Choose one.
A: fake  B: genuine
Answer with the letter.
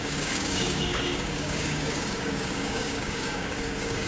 A